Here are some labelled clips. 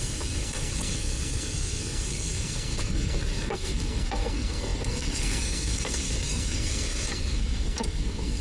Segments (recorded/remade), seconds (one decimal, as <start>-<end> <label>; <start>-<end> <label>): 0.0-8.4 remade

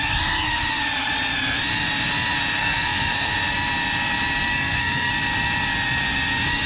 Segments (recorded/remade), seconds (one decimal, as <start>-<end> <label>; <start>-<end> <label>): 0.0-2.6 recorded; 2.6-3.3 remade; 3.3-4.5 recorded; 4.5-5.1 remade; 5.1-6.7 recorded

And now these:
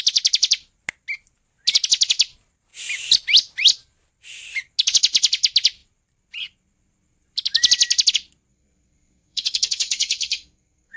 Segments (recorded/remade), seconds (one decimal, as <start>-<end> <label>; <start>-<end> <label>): 0.0-8.5 recorded; 8.5-11.0 remade